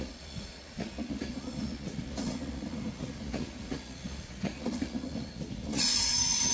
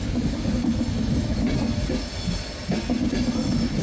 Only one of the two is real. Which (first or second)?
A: second